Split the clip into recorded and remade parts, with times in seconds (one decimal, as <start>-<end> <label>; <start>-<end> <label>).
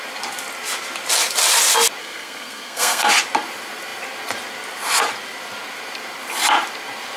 0.0-2.0 recorded; 2.0-3.1 remade; 3.1-7.2 recorded